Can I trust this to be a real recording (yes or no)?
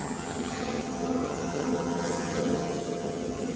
no